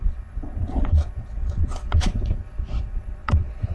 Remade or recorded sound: remade